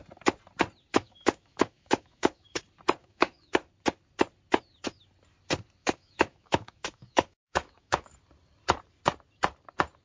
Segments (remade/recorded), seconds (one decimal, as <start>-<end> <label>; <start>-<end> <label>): 0.0-0.9 recorded; 0.9-2.6 remade; 2.6-3.0 recorded; 3.0-3.7 remade; 3.7-5.8 recorded; 5.8-8.1 remade; 8.1-10.0 recorded